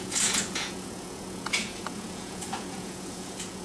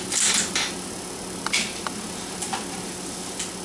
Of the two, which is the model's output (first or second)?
first